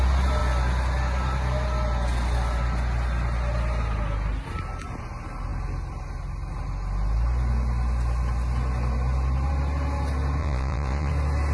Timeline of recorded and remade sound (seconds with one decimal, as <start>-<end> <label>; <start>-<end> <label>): 0.0-10.4 recorded; 10.4-11.1 remade; 11.1-11.5 recorded